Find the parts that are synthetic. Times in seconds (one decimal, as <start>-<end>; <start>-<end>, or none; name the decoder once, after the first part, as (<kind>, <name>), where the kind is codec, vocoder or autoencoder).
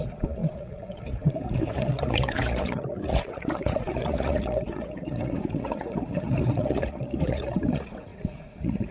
0.0-8.9 (vocoder, Vocos)